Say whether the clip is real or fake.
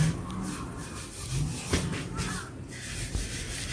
real